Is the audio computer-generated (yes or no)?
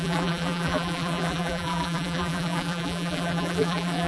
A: yes